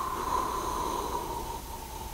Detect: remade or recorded recorded